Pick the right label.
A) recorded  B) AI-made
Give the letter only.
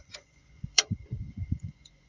B